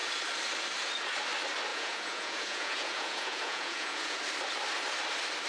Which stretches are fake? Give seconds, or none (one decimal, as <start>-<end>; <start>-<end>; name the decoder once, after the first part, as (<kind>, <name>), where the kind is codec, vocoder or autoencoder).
1.7-4.2 (vocoder, Vocos)